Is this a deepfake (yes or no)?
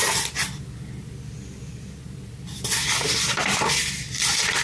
no